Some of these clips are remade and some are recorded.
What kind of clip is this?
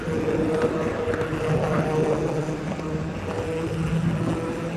recorded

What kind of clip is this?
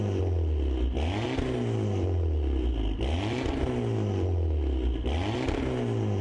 recorded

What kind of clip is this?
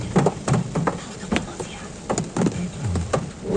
recorded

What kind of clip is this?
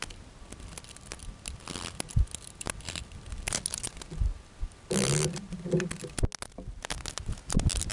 recorded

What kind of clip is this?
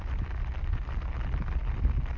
recorded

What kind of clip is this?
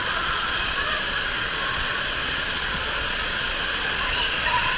remade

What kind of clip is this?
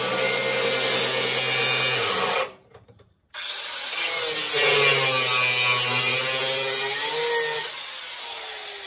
recorded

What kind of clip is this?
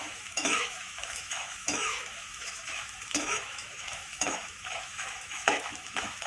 remade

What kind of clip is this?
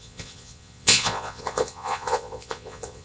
remade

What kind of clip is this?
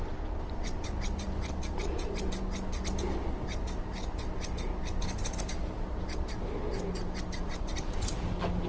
recorded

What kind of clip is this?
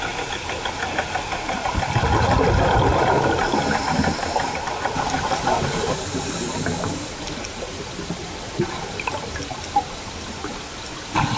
recorded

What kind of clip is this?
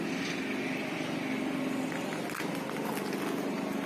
recorded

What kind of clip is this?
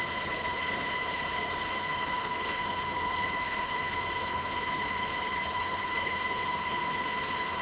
remade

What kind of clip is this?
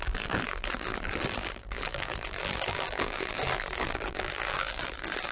remade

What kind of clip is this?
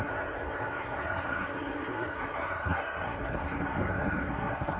remade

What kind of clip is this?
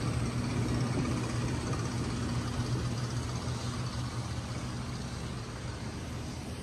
recorded